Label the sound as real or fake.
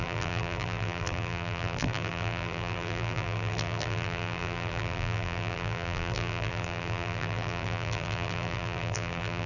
fake